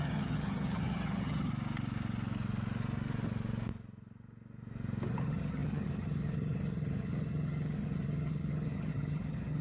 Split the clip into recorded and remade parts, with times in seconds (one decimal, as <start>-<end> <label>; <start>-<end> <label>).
0.0-1.5 remade; 1.5-5.1 recorded; 5.1-9.6 remade

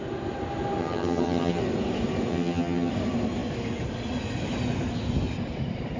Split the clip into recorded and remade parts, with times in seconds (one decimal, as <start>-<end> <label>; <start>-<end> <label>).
0.0-0.8 recorded; 0.8-1.6 remade; 1.6-2.3 recorded; 2.3-2.9 remade; 2.9-6.0 recorded

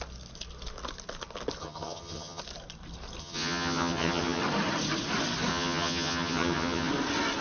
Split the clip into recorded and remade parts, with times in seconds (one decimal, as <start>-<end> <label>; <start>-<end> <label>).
0.0-1.6 recorded; 1.6-2.4 remade; 2.4-3.2 recorded; 3.2-4.4 remade; 4.4-5.5 recorded; 5.5-6.9 remade; 6.9-7.4 recorded

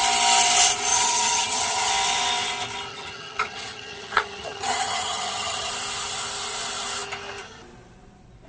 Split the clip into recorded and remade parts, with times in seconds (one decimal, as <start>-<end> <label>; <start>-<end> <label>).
0.0-0.9 recorded; 0.9-1.9 remade; 1.9-2.9 recorded; 2.9-5.7 remade; 5.7-8.5 recorded

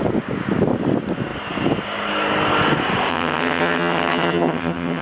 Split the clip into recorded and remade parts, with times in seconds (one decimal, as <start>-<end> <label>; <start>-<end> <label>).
0.0-3.1 recorded; 3.1-5.0 remade

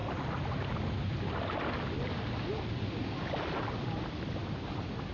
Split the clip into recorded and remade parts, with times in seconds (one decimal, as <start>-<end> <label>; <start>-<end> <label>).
0.0-5.1 recorded

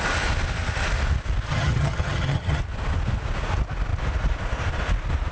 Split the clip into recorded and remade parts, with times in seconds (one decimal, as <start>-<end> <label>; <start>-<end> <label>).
0.0-1.5 recorded; 1.5-2.6 remade; 2.6-5.3 recorded